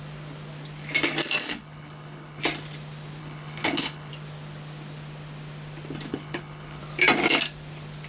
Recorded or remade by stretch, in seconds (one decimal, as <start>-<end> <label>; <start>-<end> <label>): 0.0-1.4 recorded; 1.4-2.4 remade; 2.4-3.2 recorded; 3.2-4.1 remade; 4.1-6.1 recorded; 6.1-6.8 remade; 6.8-8.1 recorded